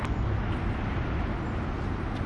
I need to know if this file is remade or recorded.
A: recorded